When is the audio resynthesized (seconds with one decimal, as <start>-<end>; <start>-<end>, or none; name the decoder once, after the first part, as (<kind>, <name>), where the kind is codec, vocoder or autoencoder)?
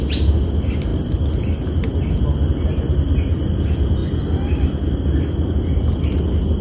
none